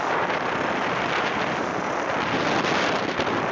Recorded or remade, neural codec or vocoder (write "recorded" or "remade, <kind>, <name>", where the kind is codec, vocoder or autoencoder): recorded